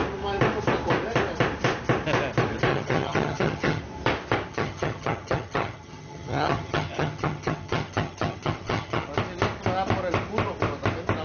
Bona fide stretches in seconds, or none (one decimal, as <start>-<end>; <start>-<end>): 0.0-2.7; 3.8-4.5; 9.1-11.2